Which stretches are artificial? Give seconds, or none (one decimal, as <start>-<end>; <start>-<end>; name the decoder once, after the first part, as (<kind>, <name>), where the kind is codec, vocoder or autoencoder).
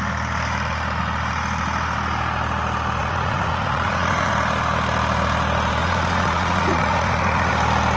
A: 3.0-4.3 (vocoder, Vocos); 5.8-7.5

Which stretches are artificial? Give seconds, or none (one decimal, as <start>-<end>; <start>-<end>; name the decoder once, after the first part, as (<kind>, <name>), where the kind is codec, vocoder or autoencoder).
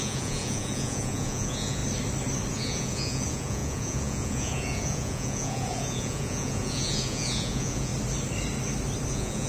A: 0.0-1.8 (vocoder, Vocos); 2.5-7.9; 9.1-9.5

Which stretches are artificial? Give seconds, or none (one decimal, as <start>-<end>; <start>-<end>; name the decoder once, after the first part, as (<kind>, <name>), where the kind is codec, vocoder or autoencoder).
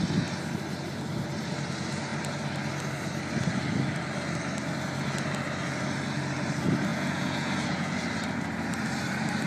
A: 6.9-8.0 (vocoder, Vocos)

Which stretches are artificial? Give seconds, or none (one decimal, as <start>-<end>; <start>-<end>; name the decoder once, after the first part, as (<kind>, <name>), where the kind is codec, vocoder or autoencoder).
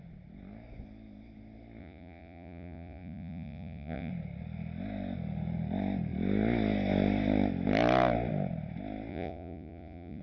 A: 1.8-4.1 (vocoder, Vocos); 9.1-10.2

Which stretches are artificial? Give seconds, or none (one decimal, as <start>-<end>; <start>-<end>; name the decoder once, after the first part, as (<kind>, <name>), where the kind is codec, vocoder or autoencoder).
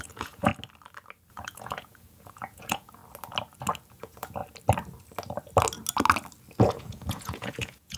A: 0.0-0.5 (vocoder, Vocos); 1.3-3.0; 3.9-4.4; 6.6-8.0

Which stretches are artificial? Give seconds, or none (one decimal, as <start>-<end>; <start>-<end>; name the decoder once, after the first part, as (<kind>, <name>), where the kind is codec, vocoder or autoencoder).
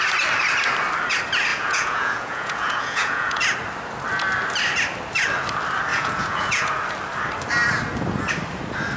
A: 1.5-3.4 (vocoder, Vocos); 5.9-6.7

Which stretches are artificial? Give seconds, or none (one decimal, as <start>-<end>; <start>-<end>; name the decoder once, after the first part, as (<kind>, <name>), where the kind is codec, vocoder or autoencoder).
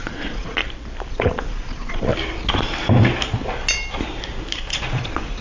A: 0.0-0.6 (vocoder, Vocos); 1.1-2.1; 4.9-5.4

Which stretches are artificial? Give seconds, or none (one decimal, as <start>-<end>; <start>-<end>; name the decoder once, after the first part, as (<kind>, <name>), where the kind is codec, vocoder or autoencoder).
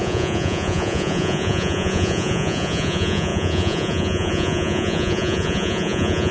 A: 0.0-6.3 (vocoder, Vocos)